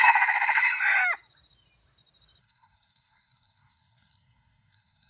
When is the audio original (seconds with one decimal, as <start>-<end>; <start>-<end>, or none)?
0.6-2.4